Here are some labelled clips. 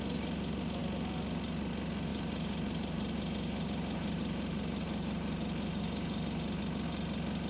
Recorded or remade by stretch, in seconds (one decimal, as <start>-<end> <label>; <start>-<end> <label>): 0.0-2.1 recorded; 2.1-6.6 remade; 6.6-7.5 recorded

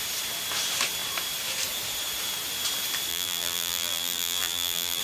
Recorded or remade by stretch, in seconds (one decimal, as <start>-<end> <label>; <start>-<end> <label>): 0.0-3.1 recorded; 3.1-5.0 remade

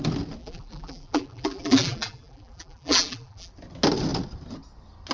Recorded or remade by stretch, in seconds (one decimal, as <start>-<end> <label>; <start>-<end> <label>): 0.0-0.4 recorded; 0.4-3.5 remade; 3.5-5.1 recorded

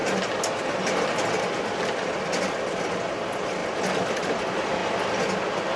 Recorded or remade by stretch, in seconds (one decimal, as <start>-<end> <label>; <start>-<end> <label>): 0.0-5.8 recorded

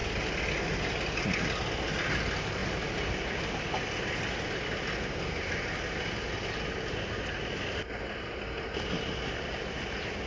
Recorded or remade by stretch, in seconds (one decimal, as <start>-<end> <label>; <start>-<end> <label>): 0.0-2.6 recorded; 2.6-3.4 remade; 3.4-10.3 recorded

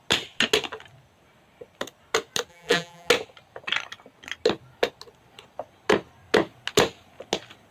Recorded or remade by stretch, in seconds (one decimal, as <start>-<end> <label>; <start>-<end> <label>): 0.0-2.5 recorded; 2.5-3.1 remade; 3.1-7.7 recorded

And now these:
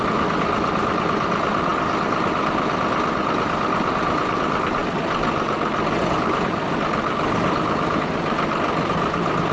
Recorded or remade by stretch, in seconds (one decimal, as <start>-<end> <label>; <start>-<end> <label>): 0.0-9.5 recorded